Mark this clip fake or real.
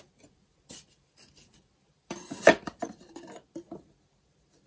fake